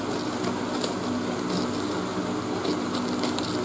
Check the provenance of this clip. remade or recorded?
recorded